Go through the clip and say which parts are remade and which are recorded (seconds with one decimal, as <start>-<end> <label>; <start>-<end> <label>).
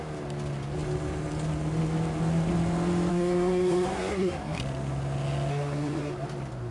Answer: 0.0-3.1 recorded; 3.1-4.6 remade; 4.6-5.5 recorded; 5.5-6.1 remade; 6.1-6.7 recorded